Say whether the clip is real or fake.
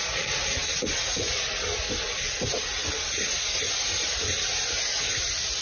real